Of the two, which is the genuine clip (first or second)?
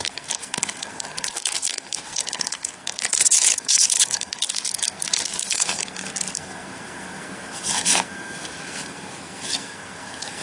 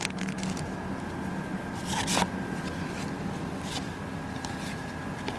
second